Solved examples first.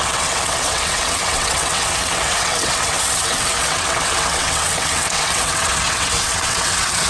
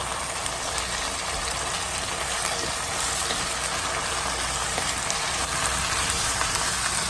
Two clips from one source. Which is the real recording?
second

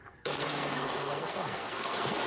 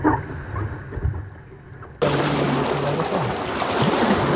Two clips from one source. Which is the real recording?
second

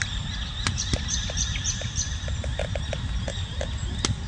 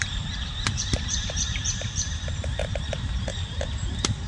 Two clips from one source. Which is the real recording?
first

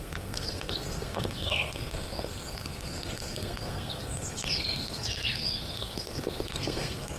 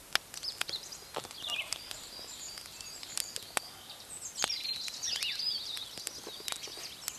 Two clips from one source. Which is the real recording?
second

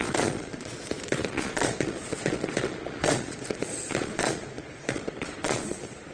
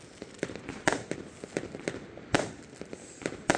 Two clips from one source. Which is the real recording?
second